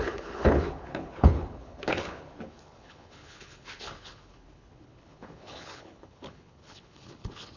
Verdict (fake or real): fake